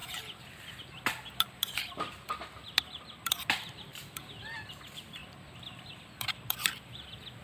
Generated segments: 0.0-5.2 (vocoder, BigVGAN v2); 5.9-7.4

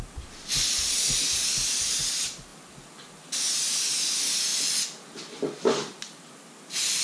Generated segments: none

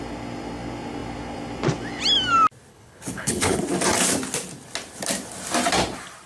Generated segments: 2.7-3.6 (codec, HILCodec)

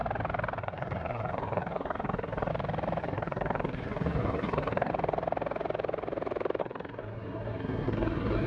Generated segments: 0.6-2.5 (codec, SNAC); 3.0-4.9; 6.6-8.5

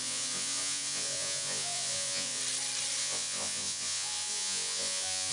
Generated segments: 0.0-2.4 (vocoder, Vocos); 3.0-5.3